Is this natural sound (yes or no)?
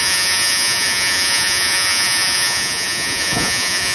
no